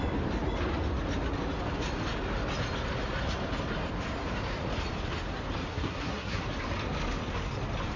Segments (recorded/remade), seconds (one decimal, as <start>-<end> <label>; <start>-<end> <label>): 0.0-5.7 recorded; 5.7-6.4 remade; 6.4-8.0 recorded

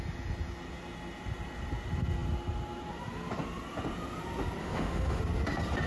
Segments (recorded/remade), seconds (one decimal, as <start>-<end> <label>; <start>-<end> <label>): 0.0-4.6 recorded; 4.6-5.2 remade; 5.2-5.9 recorded

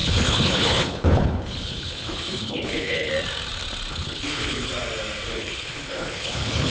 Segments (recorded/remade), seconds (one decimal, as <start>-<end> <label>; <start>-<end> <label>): 0.0-3.1 remade; 3.1-3.9 recorded; 3.9-4.7 remade; 4.7-5.3 recorded; 5.3-6.7 remade